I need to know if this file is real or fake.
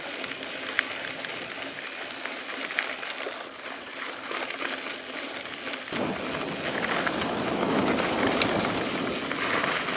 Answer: real